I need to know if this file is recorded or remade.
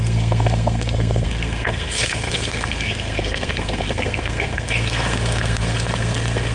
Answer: remade